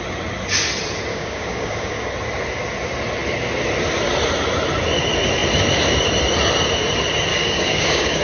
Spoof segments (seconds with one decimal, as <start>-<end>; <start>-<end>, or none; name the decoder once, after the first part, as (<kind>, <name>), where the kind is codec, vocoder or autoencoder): 1.1-2.1 (codec, DAC); 7.3-8.2